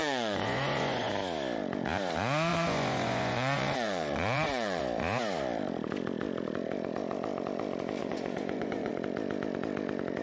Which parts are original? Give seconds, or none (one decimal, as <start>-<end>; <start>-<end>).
1.1-2.5; 4.8-8.0; 8.9-10.2